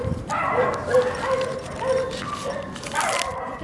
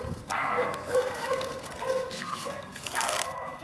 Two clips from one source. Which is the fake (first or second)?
second